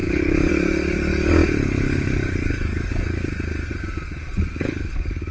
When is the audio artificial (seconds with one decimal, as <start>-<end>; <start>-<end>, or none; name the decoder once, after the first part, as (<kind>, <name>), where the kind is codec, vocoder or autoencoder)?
0.0-3.3 (codec, DAC); 4.5-5.3